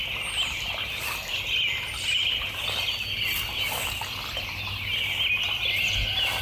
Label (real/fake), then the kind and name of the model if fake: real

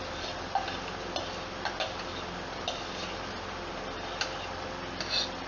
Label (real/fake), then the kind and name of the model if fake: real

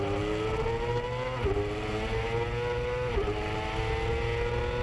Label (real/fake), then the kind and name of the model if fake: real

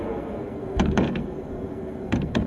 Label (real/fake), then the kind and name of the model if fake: fake, codec, SNAC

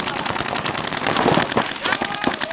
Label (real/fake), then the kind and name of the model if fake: real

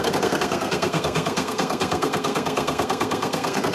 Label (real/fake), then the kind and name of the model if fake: fake, codec, SNAC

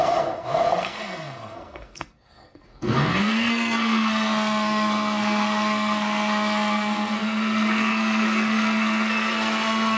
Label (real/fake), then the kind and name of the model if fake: fake, codec, SNAC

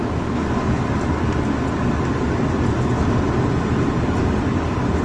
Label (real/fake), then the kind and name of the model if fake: real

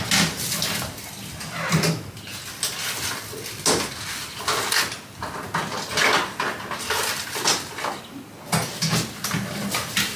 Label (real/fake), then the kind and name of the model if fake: real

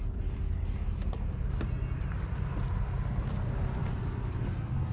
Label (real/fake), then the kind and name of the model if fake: real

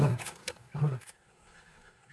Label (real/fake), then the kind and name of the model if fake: fake, codec, SNAC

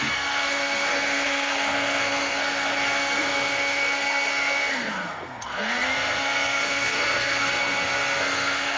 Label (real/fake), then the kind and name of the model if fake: fake, codec, SNAC